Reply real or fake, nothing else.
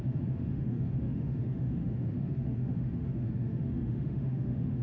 fake